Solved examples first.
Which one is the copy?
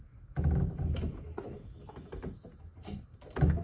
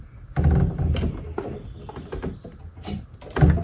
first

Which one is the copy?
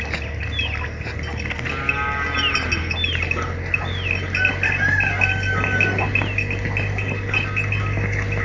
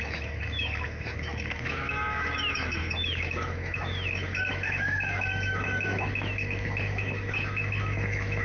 second